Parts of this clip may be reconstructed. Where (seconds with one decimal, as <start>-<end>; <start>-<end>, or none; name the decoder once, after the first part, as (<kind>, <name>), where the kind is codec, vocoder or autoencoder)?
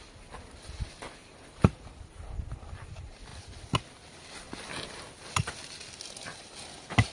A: 1.2-1.9 (vocoder, BigVGAN v2)